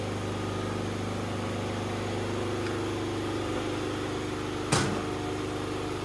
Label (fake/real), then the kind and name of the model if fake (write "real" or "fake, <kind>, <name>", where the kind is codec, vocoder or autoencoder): real